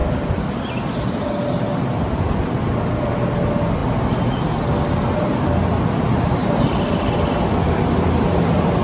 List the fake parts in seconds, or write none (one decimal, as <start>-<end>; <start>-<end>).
none